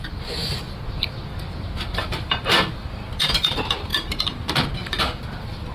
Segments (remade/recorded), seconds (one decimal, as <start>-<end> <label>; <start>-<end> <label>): 0.0-5.7 remade